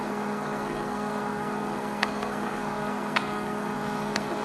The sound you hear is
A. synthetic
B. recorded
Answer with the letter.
A